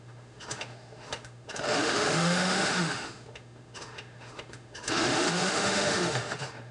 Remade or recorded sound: remade